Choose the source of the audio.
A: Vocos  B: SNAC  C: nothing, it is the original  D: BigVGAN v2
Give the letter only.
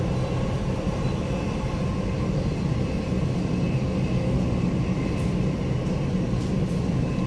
C